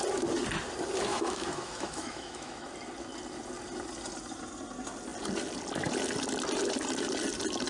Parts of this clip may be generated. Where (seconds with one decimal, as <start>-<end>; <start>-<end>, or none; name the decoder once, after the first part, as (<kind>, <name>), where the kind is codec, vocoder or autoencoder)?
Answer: 1.1-2.7 (autoencoder, DAC-VAE)